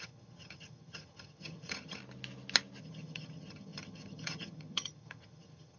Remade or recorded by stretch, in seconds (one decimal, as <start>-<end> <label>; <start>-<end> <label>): 0.0-2.0 remade; 2.0-2.8 recorded; 2.8-5.8 remade